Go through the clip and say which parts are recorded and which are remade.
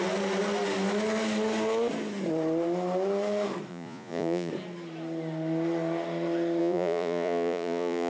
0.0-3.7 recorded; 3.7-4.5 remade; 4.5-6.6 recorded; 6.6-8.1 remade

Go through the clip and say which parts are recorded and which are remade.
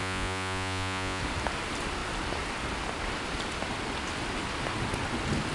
0.0-1.2 remade; 1.2-5.5 recorded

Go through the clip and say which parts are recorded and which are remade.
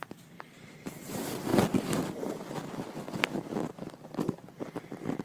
0.0-5.2 recorded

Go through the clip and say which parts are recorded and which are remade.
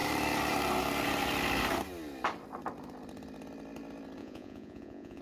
0.0-4.2 recorded; 4.2-5.2 remade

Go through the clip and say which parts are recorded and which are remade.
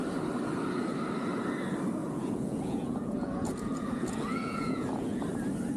0.0-2.0 recorded; 2.0-5.2 remade; 5.2-5.8 recorded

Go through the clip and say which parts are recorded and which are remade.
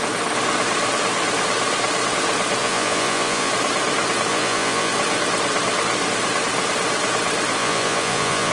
0.0-2.6 recorded; 2.6-3.5 remade; 3.5-4.3 recorded; 4.3-4.9 remade; 4.9-7.6 recorded; 7.6-8.5 remade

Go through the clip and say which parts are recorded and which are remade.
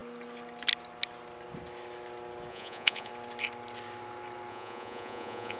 0.0-2.5 recorded; 2.5-3.1 remade; 3.1-4.5 recorded; 4.5-5.6 remade